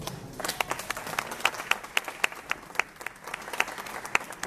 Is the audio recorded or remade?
recorded